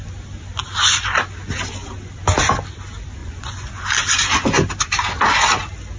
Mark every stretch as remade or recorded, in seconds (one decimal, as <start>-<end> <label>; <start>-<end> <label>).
0.0-3.2 recorded; 3.2-3.8 remade; 3.8-6.0 recorded